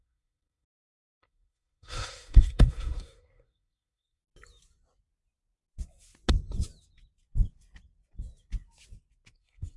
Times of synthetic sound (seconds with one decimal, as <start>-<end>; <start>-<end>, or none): 0.0-4.2; 9.3-9.8